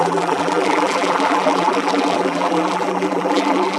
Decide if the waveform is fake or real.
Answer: fake